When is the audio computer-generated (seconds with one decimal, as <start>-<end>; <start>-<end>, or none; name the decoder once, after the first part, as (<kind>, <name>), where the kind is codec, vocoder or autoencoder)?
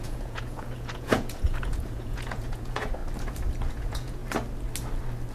0.0-3.0 (vocoder, Vocos); 3.7-4.2